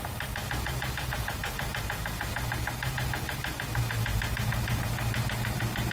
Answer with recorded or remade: recorded